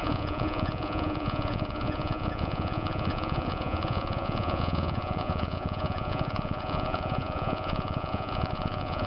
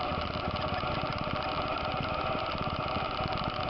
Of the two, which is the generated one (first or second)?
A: first